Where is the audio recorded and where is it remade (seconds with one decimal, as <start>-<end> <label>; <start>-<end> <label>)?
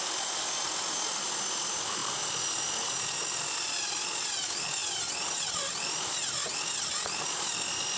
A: 0.0-8.0 recorded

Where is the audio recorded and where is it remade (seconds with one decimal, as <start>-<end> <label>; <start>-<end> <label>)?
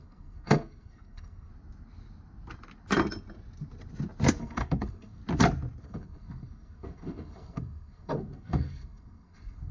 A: 0.0-1.5 remade; 1.5-4.4 recorded; 4.4-5.2 remade; 5.2-5.8 recorded; 5.8-9.7 remade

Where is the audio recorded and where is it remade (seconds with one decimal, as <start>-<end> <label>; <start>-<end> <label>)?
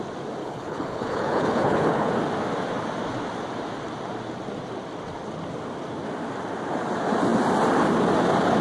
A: 0.0-0.4 recorded; 0.4-2.1 remade; 2.1-8.6 recorded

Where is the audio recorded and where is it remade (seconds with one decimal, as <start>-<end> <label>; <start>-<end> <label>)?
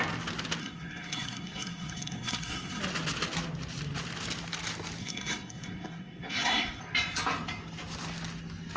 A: 0.0-0.6 recorded; 0.6-2.8 remade; 2.8-5.0 recorded; 5.0-6.8 remade; 6.8-8.8 recorded